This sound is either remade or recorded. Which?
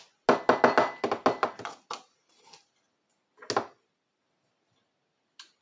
recorded